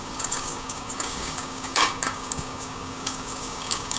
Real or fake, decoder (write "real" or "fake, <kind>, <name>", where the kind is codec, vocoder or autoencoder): fake, codec, DAC